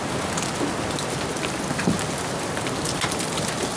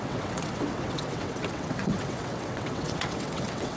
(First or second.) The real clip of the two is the first